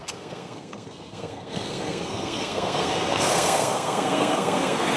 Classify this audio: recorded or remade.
remade